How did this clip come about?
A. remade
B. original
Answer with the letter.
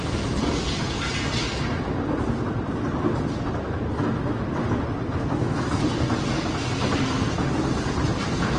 B